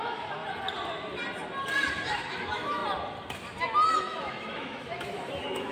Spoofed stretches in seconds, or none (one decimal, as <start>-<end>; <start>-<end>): 0.0-0.4; 2.1-2.8; 3.9-5.7